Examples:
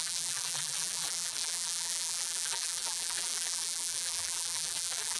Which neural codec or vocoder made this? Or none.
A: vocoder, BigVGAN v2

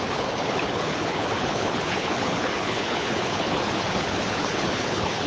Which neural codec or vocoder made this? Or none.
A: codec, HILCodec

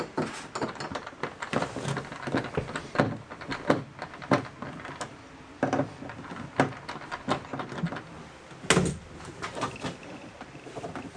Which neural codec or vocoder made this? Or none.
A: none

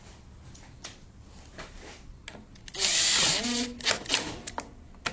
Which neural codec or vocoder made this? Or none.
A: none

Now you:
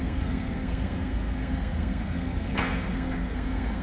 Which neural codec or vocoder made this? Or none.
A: codec, SNAC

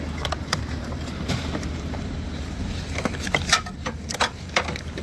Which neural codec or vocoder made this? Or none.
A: vocoder, BigVGAN v2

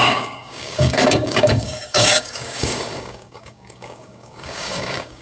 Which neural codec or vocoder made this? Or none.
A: codec, DAC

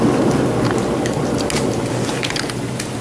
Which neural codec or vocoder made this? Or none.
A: none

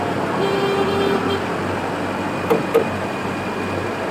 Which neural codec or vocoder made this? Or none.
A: none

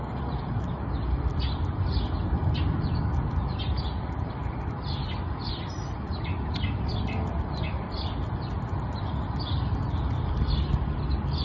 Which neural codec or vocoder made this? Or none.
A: none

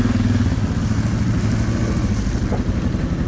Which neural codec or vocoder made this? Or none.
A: none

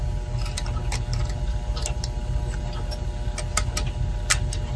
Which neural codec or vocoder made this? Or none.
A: none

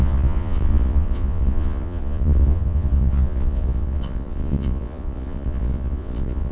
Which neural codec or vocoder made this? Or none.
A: vocoder, Vocos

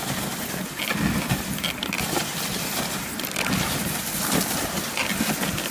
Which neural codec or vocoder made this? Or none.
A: none